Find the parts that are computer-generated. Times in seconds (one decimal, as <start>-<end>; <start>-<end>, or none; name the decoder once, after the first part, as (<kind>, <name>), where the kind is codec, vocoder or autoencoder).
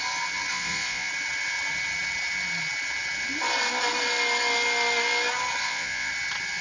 0.5-1.1 (vocoder, Vocos); 5.6-6.1